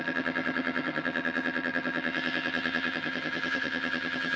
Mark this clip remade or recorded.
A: remade